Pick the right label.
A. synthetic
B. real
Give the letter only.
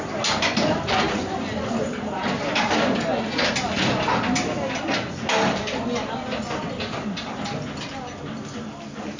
B